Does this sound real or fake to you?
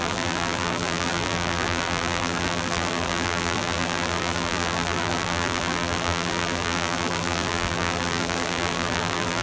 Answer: fake